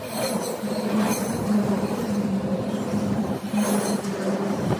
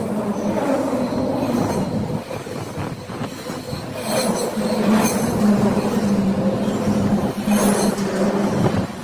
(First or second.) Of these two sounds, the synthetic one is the first